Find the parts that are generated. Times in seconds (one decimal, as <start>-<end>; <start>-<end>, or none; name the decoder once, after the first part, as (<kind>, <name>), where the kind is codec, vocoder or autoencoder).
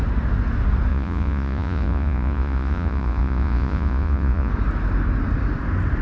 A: 0.9-4.5 (vocoder, Vocos)